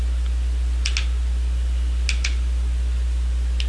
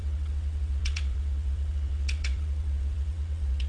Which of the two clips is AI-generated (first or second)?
second